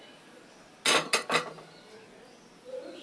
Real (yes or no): yes